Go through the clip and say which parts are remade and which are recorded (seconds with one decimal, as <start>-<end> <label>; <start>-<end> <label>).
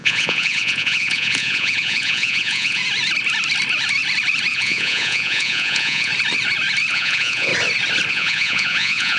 0.0-2.8 remade; 2.8-4.5 recorded; 4.5-6.1 remade; 6.1-6.9 recorded; 6.9-7.5 remade; 7.5-8.1 recorded; 8.1-9.2 remade